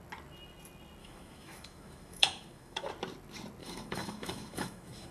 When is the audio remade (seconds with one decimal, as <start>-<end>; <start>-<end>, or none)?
1.0-2.9; 3.6-5.1